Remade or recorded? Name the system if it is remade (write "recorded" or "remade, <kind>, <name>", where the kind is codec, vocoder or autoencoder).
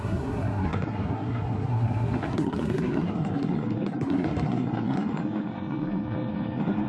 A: remade, codec, SNAC